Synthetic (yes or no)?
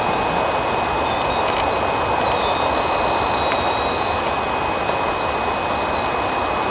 no